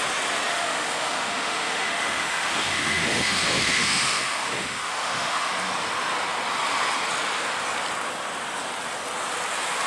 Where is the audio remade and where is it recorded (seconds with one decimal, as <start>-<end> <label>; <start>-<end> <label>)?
0.0-0.5 recorded; 0.5-5.5 remade; 5.5-9.9 recorded

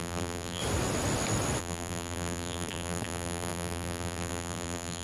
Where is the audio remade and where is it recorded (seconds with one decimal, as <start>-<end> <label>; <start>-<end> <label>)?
0.0-0.6 remade; 0.6-1.6 recorded; 1.6-5.0 remade

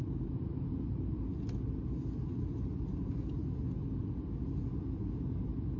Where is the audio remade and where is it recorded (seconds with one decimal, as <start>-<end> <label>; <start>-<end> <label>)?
0.0-5.8 recorded

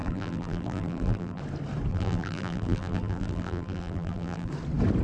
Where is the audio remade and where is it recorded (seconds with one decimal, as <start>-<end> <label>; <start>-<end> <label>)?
0.0-1.4 remade; 1.4-1.9 recorded; 1.9-4.5 remade; 4.5-5.0 recorded

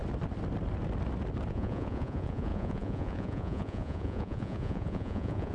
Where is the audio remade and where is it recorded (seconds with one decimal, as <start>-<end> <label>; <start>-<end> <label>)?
0.0-1.5 recorded; 1.5-5.5 remade

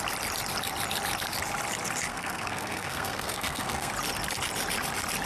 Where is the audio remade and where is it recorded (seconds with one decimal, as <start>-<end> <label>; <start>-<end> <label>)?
0.0-2.1 recorded; 2.1-3.9 remade; 3.9-5.3 recorded